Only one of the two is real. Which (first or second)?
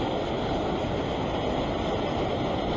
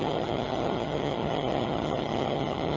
first